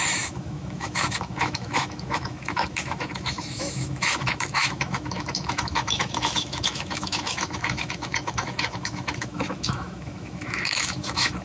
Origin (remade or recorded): remade